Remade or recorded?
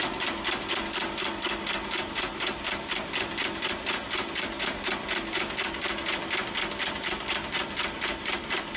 recorded